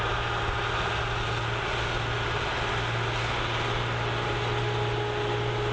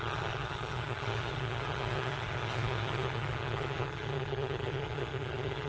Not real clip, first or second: second